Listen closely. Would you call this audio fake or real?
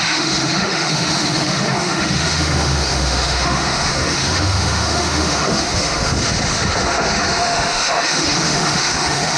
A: fake